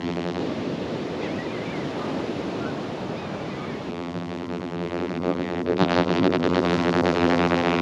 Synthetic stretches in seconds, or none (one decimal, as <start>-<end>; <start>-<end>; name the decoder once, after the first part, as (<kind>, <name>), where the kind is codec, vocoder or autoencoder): 0.0-0.4 (vocoder, BigVGAN v2); 3.9-7.8